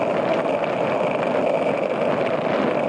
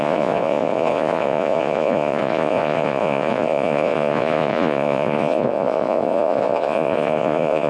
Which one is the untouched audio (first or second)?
first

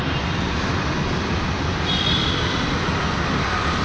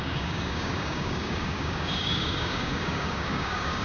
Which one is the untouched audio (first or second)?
first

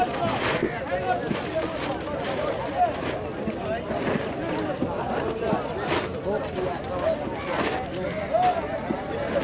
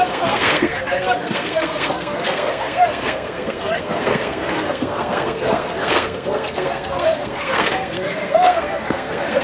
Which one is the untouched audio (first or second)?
first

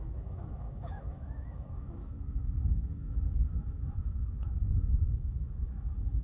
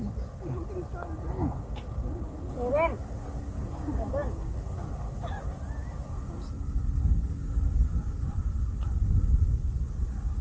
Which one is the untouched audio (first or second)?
second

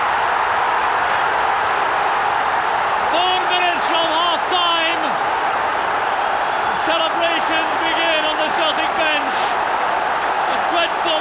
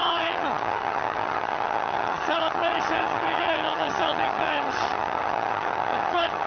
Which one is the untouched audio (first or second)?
first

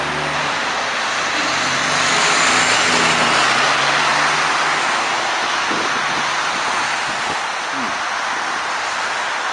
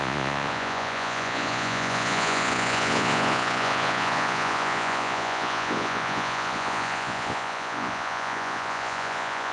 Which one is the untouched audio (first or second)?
first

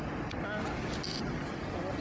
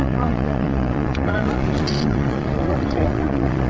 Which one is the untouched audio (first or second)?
first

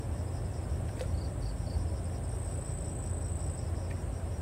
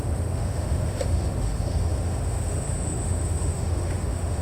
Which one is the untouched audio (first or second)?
first